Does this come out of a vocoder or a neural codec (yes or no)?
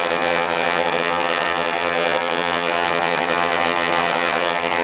yes